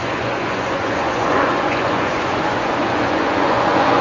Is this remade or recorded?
remade